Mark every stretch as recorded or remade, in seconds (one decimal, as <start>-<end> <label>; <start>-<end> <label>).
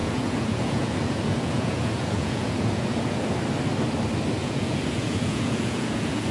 0.0-3.4 remade; 3.4-4.4 recorded; 4.4-6.3 remade